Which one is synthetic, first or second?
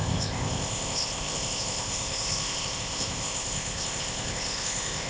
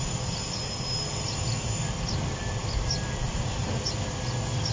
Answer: first